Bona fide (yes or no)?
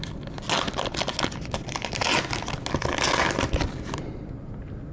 yes